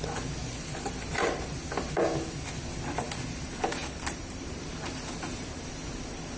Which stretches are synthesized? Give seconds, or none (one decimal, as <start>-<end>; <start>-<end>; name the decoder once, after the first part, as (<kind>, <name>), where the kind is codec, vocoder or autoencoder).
0.4-1.6 (vocoder, BigVGAN v2); 3.8-4.6